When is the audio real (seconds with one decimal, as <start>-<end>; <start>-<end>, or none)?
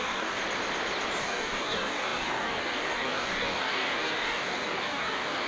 0.4-1.2